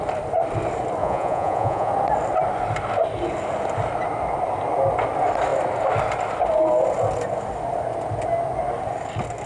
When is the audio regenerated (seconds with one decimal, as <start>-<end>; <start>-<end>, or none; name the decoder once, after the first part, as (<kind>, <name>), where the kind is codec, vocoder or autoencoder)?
1.0-1.9 (vocoder, Vocos)